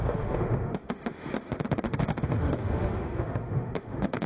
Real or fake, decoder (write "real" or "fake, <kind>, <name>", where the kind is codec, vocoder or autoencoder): fake, autoencoder, DAC-VAE